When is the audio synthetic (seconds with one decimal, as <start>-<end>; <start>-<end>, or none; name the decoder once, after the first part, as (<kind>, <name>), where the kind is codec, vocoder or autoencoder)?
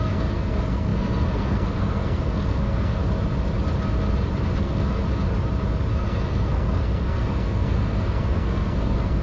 0.0-3.0 (codec, SNAC); 4.6-5.0; 5.9-9.2